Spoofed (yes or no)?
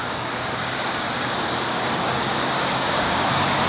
yes